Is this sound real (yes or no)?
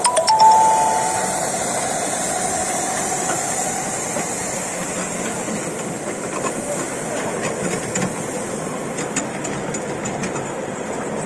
yes